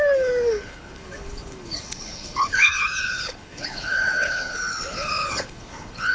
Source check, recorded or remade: remade